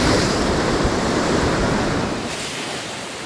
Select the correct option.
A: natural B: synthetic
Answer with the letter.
B